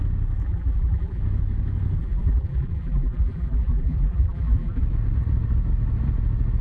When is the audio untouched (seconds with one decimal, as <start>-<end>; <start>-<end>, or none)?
0.0-0.4; 1.2-2.0; 4.8-6.6